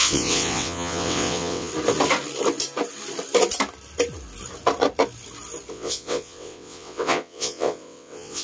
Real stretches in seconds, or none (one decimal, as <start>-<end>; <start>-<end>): 1.7-5.7